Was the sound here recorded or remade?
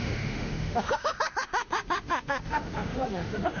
remade